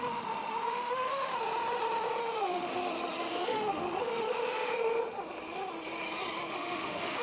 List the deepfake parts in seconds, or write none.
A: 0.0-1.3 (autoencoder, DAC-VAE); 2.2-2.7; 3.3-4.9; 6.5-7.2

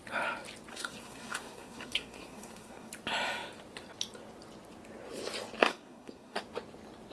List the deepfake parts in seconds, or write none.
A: 0.7-2.9 (codec, SNAC); 5.7-6.4

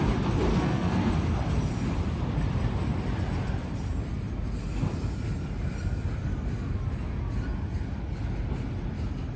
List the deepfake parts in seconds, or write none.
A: 0.5-1.1 (codec, SNAC)